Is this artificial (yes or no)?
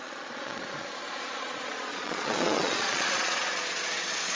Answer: yes